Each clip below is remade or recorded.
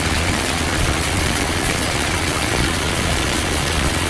remade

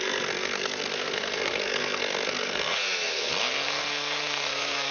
remade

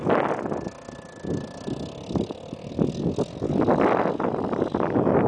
recorded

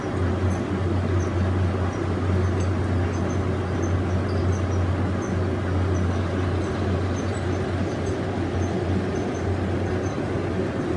recorded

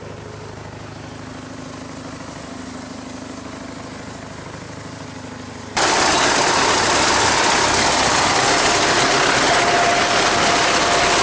recorded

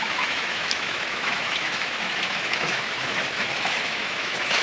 remade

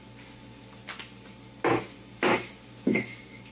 recorded